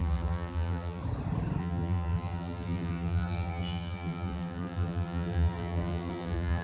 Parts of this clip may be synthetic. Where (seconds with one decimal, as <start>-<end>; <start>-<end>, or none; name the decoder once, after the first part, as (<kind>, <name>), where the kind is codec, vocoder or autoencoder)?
0.0-1.0 (vocoder, BigVGAN v2); 1.6-6.6